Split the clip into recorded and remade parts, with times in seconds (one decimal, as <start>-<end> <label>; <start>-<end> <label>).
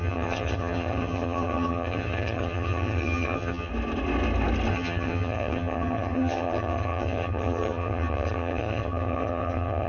0.0-3.7 remade; 3.7-4.7 recorded; 4.7-9.9 remade